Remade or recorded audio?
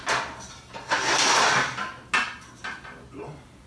recorded